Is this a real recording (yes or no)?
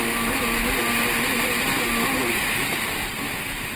yes